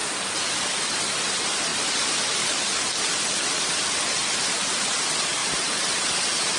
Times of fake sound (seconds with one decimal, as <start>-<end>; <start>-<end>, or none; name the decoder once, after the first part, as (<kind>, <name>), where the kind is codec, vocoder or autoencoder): 0.0-0.6 (vocoder, BigVGAN v2); 1.7-2.4; 5.4-6.6